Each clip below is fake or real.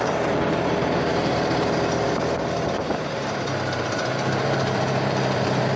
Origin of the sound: fake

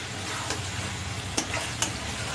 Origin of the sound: real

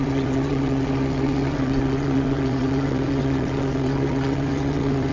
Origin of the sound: fake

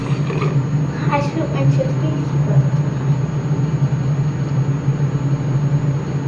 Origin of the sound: real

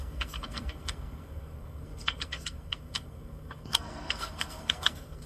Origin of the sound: fake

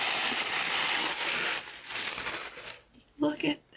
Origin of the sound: real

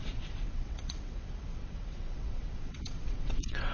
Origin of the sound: fake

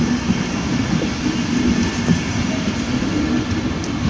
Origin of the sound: real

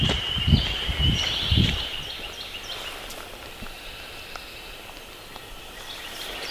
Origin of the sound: real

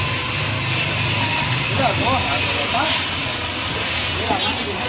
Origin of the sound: real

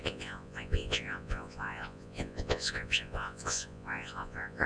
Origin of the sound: fake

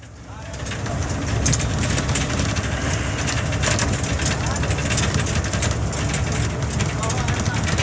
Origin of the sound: real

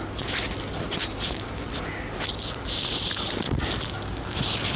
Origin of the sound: real